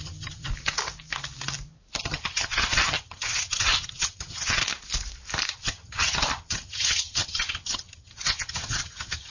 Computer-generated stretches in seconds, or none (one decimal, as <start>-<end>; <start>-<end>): 0.0-0.5; 2.0-4.6; 5.5-9.3